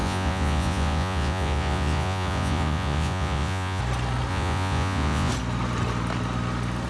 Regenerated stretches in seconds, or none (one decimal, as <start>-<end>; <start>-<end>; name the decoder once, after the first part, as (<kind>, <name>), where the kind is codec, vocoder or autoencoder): 0.0-3.8 (vocoder, Vocos); 4.3-5.3

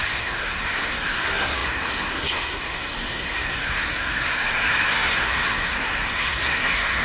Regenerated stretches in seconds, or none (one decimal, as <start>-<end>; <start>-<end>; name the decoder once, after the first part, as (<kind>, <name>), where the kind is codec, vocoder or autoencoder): 0.0-7.0 (codec, SNAC)

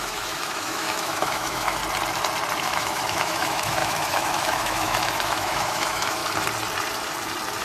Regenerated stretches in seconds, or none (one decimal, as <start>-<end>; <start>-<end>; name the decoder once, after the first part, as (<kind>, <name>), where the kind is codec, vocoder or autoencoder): 0.0-1.8 (autoencoder, DAC-VAE); 2.6-6.2

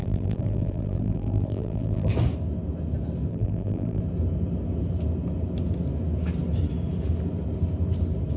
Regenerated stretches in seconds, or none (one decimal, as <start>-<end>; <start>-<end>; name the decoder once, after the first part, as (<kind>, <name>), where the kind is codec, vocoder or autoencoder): 0.0-2.1 (vocoder, BigVGAN v2); 3.3-4.0

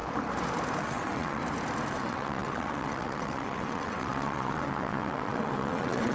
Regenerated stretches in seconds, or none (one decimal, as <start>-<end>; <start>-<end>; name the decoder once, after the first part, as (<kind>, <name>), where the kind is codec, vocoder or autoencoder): 0.8-1.4 (vocoder, WaveNeXt); 1.9-6.1

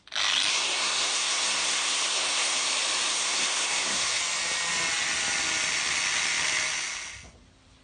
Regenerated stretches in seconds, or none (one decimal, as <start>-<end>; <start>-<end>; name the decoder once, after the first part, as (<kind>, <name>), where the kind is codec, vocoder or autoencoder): 0.5-2.7 (codec, SNAC); 3.1-4.2